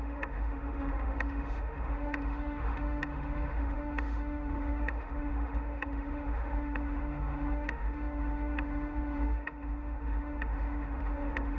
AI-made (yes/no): yes